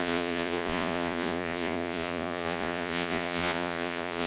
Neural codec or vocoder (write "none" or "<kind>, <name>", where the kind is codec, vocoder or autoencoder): vocoder, Vocos